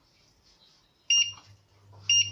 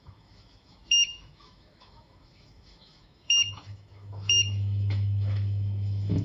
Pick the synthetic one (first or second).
second